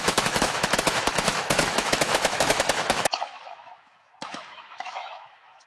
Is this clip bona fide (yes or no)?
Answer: no